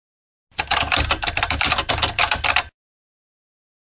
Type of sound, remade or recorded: recorded